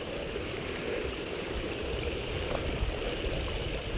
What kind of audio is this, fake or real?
real